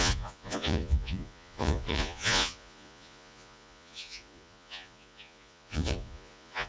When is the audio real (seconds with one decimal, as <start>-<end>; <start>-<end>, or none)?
none